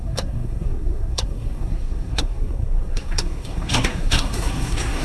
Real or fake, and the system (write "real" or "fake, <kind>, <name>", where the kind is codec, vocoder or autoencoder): fake, codec, SNAC